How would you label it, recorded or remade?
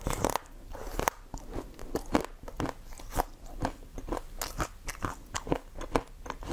recorded